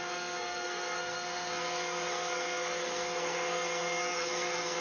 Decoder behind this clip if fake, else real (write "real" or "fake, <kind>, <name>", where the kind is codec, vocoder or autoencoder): fake, codec, SNAC